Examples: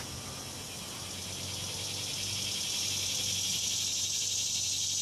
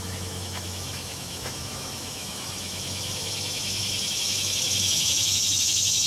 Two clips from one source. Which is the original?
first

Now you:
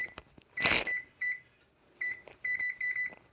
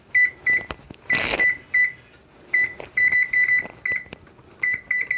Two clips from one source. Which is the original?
second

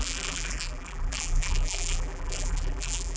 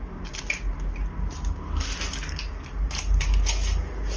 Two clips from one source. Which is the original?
second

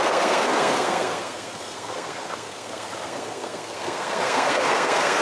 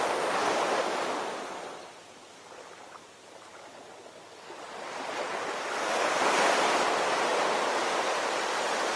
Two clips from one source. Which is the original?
second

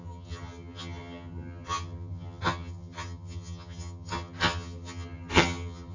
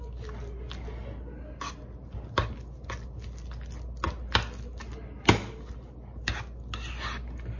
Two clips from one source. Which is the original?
second